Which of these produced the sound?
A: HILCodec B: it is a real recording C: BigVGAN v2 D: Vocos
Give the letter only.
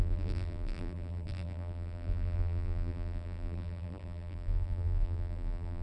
C